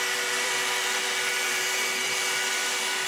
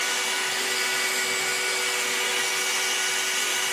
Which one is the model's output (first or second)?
first